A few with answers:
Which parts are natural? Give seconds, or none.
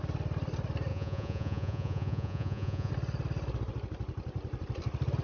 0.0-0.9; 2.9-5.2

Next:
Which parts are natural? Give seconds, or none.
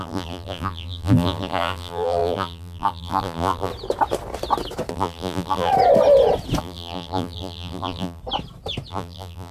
3.7-4.9; 5.7-6.6; 8.2-8.9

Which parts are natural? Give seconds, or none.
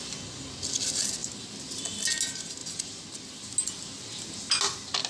0.0-1.2; 1.8-5.1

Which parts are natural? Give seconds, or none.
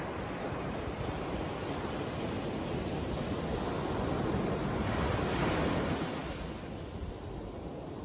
0.0-8.0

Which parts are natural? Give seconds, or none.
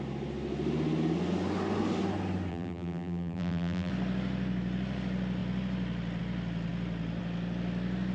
0.0-2.5; 3.9-8.1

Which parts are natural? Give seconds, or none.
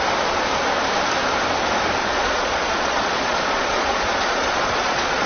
0.0-2.0